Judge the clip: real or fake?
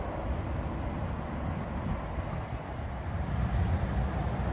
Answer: real